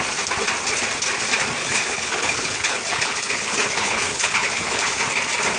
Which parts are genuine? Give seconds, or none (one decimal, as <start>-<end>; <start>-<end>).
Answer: 0.0-1.6; 5.0-5.6